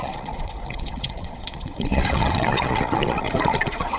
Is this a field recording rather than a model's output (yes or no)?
no